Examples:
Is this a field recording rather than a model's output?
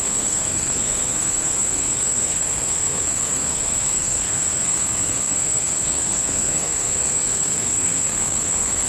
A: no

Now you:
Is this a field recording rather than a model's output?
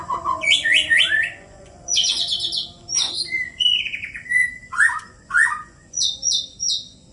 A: no